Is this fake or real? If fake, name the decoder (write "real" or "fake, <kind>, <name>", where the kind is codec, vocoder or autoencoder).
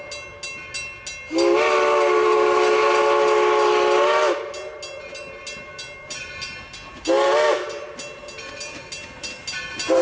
real